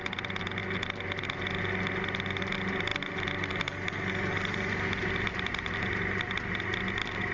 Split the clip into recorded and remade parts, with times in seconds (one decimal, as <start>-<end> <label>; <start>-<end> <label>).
0.0-7.3 recorded